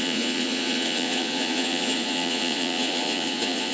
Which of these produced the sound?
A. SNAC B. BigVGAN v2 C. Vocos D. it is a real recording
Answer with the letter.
C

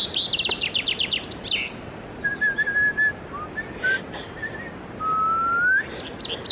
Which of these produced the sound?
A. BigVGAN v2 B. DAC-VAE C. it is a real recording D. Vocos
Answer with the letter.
C